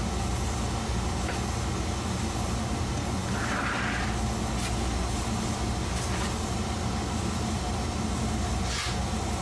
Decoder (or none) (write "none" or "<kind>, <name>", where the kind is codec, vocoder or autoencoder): none